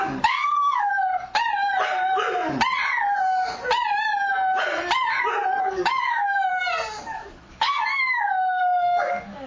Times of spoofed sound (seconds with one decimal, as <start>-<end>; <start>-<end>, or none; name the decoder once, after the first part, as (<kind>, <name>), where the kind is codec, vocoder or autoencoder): 0.0-1.1 (codec, DAC); 5.6-6.5; 7.5-9.5